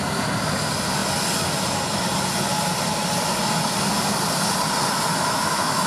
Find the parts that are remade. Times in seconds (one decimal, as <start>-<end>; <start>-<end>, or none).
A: 5.1-5.9